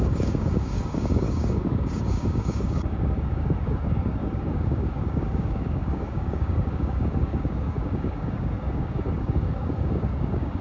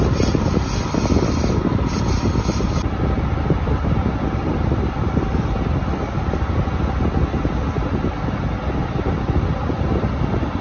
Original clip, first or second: second